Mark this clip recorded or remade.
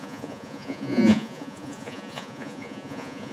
remade